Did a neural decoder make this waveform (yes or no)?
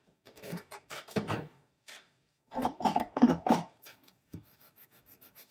yes